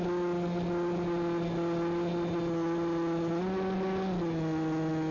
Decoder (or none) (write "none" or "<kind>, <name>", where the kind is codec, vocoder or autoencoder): none